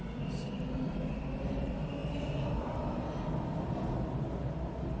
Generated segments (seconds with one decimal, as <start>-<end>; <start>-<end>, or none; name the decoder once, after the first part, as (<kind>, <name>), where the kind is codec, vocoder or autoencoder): none